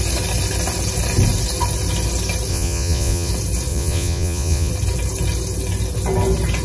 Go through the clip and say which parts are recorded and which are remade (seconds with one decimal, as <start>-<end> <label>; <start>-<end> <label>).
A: 0.0-2.5 recorded; 2.5-3.3 remade; 3.3-3.7 recorded; 3.7-4.7 remade; 4.7-6.6 recorded